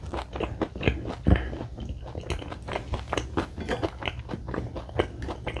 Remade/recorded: recorded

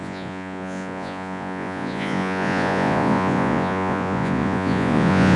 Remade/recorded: remade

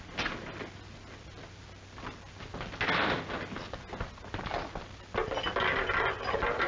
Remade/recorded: recorded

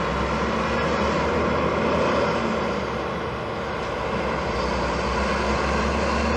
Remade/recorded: recorded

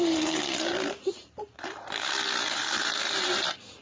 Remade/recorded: remade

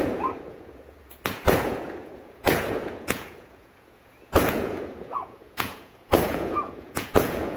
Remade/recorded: remade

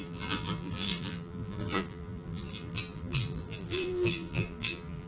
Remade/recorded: remade